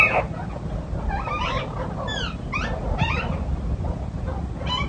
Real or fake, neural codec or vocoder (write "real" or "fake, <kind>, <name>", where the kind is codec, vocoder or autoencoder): real